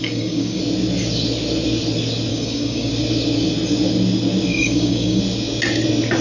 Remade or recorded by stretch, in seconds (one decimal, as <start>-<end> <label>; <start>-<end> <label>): 0.0-0.6 remade; 0.6-2.3 recorded; 2.3-2.9 remade; 2.9-4.5 recorded; 4.5-5.2 remade; 5.2-6.2 recorded